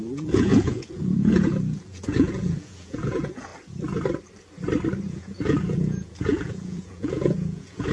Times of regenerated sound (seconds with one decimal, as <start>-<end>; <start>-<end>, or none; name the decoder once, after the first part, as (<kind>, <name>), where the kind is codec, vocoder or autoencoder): 0.0-3.5 (vocoder, Vocos); 5.1-7.9